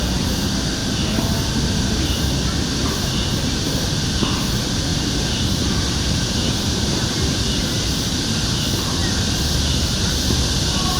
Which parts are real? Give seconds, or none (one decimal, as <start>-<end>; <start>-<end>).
0.0-4.9; 7.0-7.6; 8.6-11.0